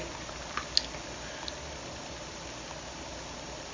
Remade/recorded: recorded